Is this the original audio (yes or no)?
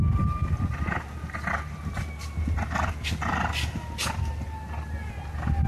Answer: yes